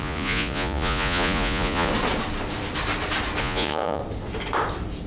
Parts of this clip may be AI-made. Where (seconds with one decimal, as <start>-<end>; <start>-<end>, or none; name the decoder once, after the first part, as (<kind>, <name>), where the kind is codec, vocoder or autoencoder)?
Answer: 0.0-1.9 (vocoder, Vocos); 3.4-4.0